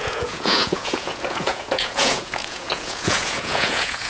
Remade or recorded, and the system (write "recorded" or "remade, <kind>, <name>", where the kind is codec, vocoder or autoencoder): remade, vocoder, Vocos